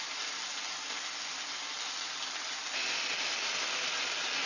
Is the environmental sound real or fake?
real